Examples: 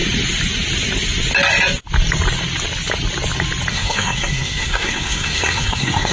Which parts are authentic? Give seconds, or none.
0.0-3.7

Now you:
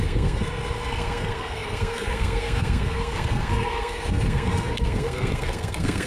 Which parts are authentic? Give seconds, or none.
none

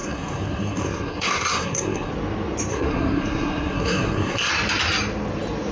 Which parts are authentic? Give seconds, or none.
2.1-2.7; 4.5-5.7

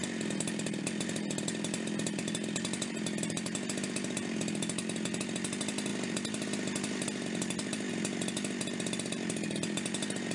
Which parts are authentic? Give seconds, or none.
0.0-10.3